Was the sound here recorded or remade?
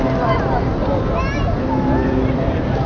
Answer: remade